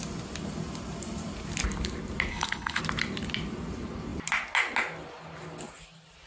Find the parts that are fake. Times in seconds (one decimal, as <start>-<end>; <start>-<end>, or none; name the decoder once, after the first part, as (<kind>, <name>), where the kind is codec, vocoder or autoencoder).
2.3-2.8 (codec, HILCodec)